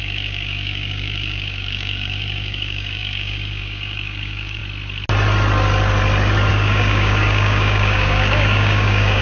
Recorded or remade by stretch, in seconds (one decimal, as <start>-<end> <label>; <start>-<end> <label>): 0.0-4.6 remade; 4.6-6.5 recorded; 6.5-9.2 remade